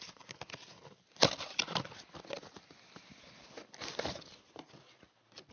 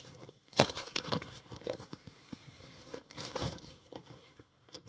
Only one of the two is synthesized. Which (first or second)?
second